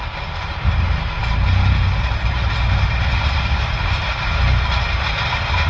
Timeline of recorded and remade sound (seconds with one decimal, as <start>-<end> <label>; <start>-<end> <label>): 0.0-5.7 recorded